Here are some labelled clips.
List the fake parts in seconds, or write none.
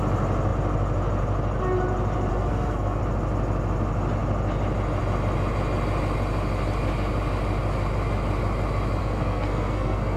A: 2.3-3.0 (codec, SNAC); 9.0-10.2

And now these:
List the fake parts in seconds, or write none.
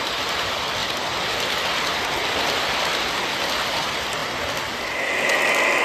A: 0.8-3.1 (vocoder, BigVGAN v2)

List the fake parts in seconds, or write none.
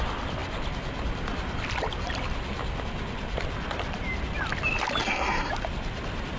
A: 5.0-5.5 (codec, SNAC)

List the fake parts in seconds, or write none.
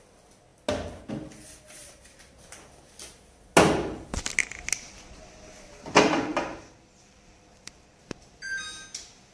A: 6.3-8.3 (vocoder, BigVGAN v2)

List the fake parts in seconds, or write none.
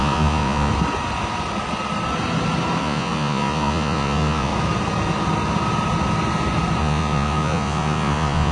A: 0.0-0.7 (vocoder, Vocos); 2.8-4.5; 6.8-8.5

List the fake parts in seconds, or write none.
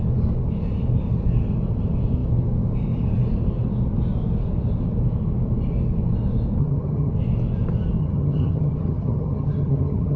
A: 6.6-7.1 (vocoder, HiFi-GAN); 8.0-10.2